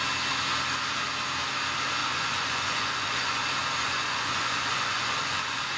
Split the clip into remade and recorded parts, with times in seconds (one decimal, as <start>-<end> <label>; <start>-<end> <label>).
0.0-2.0 recorded; 2.0-3.4 remade; 3.4-3.8 recorded; 3.8-5.8 remade